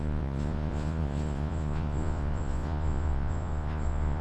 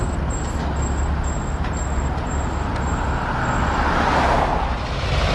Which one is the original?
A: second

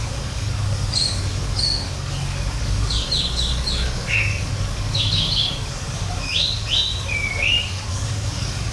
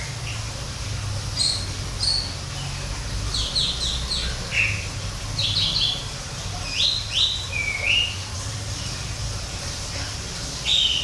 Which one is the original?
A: second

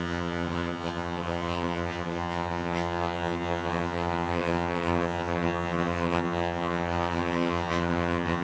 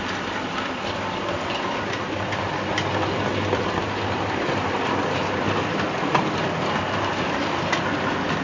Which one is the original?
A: second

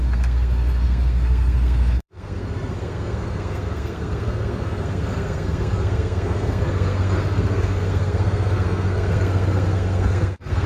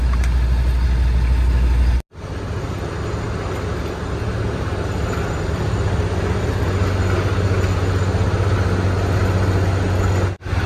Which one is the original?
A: second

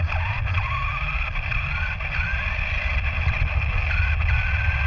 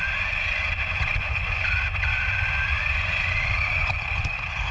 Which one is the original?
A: first